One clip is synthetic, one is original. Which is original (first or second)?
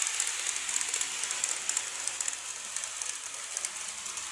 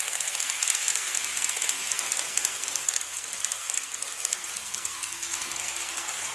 first